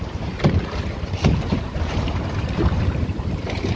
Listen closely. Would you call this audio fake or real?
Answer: real